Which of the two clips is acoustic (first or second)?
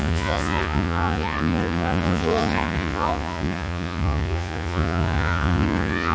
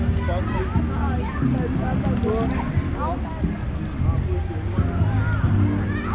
second